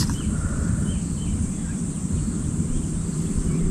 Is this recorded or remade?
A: recorded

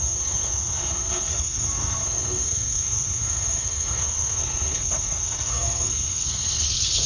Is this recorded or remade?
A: remade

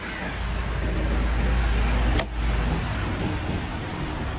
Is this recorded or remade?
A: recorded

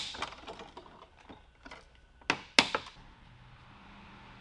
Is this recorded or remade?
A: recorded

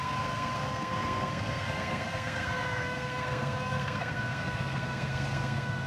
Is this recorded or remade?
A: remade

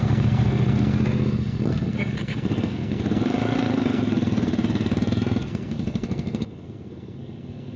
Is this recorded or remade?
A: remade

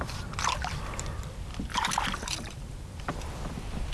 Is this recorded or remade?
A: recorded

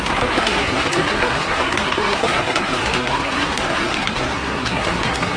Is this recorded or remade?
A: remade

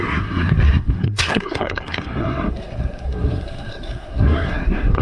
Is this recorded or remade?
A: remade